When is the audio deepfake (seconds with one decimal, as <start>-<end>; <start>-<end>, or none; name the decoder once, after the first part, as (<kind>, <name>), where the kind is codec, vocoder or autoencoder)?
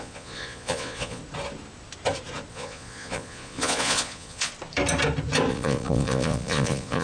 0.0-1.2 (vocoder, Vocos); 2.5-4.5; 5.5-7.0